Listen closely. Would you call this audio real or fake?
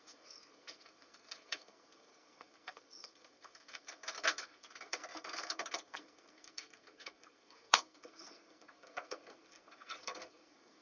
fake